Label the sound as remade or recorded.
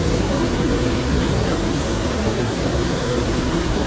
remade